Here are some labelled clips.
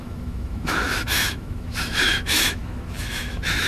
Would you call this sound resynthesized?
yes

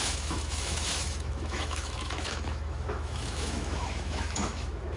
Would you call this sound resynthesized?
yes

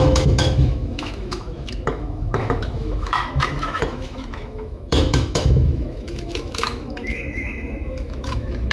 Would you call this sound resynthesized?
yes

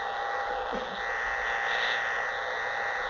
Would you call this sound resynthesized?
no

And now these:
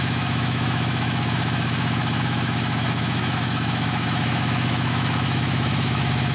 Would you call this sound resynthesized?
yes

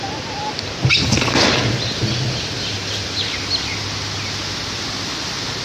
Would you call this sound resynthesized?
no